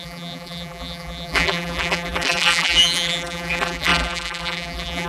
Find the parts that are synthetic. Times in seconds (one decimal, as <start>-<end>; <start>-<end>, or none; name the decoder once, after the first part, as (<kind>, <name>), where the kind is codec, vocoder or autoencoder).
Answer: 0.0-5.1 (vocoder, BigVGAN v2)